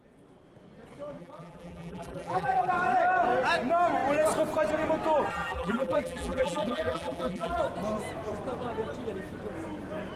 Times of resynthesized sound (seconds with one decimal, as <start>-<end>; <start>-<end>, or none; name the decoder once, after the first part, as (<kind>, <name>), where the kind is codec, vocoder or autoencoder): 1.2-2.7 (vocoder, BigVGAN v2); 5.3-7.6